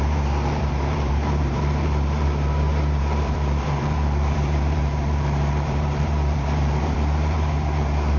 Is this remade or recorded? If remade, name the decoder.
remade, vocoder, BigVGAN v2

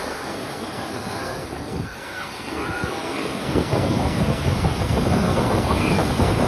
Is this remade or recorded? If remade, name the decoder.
remade, codec, SNAC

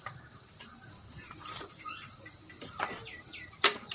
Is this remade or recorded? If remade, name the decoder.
remade, vocoder, BigVGAN v2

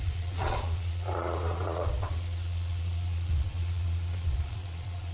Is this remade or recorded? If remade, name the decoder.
remade, vocoder, Vocos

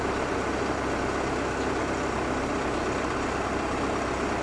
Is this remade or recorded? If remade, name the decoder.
recorded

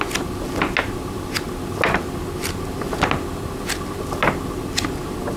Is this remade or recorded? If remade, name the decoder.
recorded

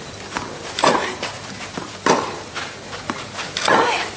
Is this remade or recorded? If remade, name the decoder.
recorded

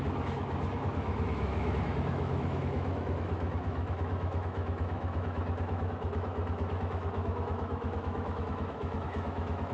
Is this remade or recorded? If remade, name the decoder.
remade, autoencoder, DAC-VAE